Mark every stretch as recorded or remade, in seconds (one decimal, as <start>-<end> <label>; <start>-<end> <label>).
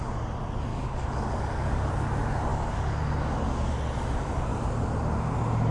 0.0-0.7 recorded; 0.7-1.9 remade; 1.9-2.5 recorded; 2.5-3.0 remade; 3.0-5.7 recorded